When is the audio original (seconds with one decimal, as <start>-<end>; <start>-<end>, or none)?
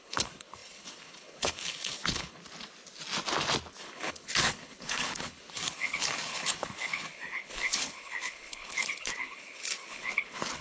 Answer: 2.4-3.8